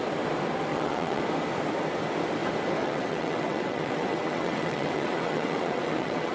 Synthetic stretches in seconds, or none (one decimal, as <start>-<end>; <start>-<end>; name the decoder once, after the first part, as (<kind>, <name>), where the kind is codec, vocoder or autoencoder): 0.7-1.2 (vocoder, WaveNeXt); 2.8-6.3